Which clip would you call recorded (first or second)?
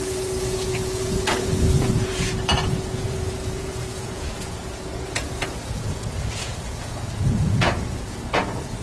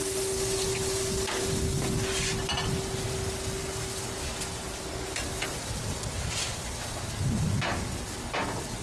second